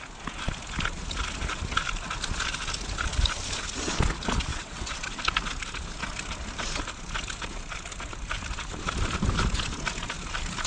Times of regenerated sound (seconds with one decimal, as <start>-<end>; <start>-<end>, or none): 4.5-5.2